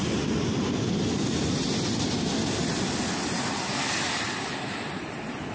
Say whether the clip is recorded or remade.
recorded